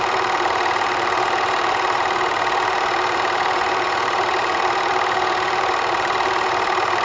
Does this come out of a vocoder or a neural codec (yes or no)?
yes